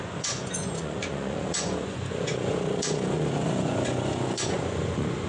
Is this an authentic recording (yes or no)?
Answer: no